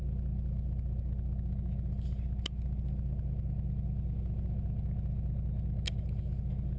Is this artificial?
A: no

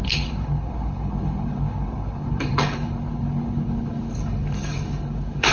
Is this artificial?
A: yes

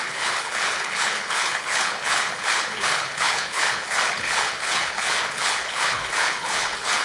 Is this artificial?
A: yes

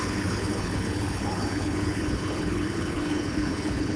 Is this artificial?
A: yes